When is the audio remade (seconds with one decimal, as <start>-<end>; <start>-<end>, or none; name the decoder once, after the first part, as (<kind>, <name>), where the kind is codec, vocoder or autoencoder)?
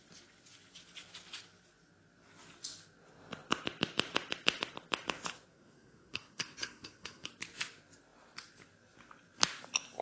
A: 5.5-7.3 (codec, SNAC)